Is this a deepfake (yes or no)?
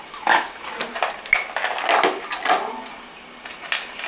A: no